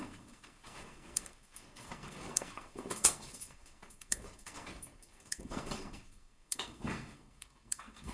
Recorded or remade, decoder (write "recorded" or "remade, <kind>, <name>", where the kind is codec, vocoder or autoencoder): remade, codec, SNAC